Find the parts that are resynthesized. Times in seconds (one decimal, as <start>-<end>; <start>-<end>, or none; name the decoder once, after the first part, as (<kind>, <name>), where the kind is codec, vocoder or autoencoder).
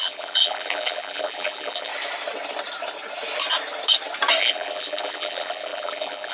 0.0-1.9 (vocoder, BigVGAN v2); 4.4-6.3